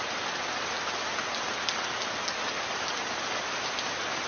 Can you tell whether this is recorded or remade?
recorded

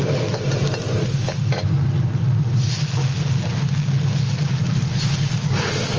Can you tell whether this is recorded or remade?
recorded